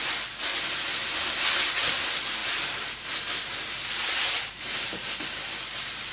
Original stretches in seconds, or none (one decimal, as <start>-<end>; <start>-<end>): 0.0-2.4